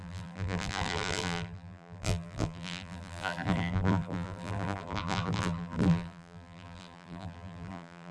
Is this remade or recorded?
remade